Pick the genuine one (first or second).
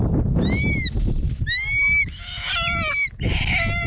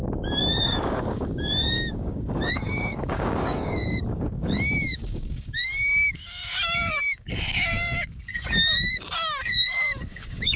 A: first